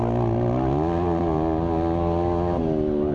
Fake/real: real